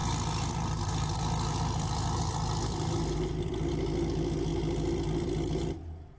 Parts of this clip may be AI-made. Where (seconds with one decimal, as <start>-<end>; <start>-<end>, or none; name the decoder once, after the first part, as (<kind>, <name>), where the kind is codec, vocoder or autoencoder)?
0.0-3.7 (vocoder, BigVGAN v2); 4.5-5.6